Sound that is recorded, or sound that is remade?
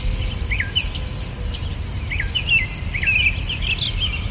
recorded